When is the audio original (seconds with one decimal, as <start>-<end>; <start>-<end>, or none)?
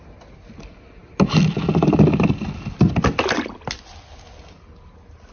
0.0-5.3